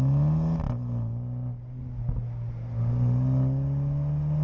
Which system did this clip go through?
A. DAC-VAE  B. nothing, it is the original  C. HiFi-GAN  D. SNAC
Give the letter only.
B